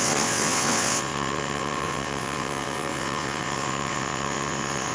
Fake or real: fake